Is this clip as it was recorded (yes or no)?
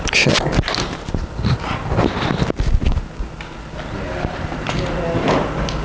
yes